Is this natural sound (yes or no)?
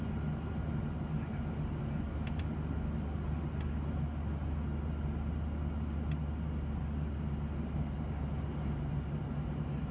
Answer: yes